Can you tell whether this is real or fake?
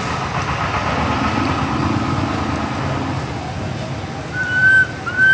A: real